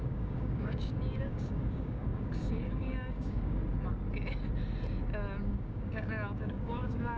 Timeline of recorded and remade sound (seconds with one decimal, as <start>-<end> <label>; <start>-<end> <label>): 0.0-3.6 remade; 3.6-5.4 recorded; 5.4-7.2 remade